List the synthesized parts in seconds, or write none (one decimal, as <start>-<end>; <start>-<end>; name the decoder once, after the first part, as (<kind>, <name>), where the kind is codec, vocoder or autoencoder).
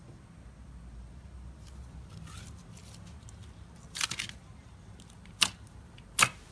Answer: none